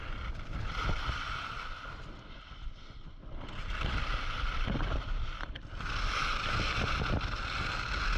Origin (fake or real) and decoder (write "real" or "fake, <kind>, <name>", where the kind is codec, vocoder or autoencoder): real